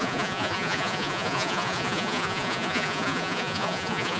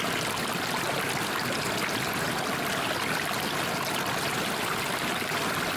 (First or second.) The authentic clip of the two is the second